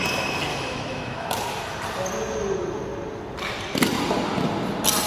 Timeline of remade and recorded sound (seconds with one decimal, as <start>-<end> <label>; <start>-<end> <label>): 0.0-0.5 recorded; 0.5-1.3 remade; 1.3-5.1 recorded